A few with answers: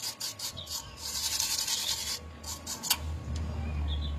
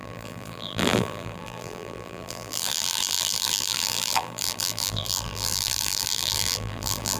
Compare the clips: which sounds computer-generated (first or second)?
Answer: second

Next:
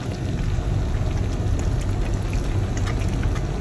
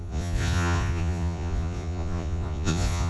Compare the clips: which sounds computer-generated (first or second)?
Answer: second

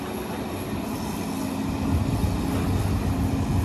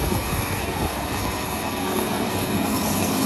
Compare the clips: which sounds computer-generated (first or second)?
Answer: second